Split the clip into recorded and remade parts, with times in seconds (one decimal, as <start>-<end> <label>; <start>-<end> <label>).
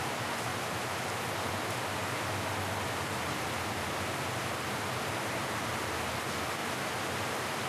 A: 0.0-6.6 recorded; 6.6-7.7 remade